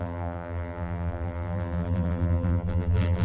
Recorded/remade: remade